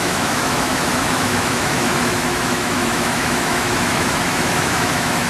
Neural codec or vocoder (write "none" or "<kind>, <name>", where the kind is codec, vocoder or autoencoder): autoencoder, DAC-VAE